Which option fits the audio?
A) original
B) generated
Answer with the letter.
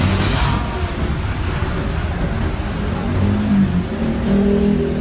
A